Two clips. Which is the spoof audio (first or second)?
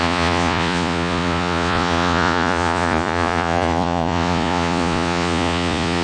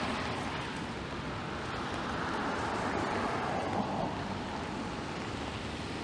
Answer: first